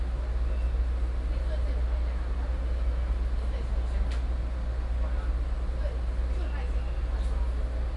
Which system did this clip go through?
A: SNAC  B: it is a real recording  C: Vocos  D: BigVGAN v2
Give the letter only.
B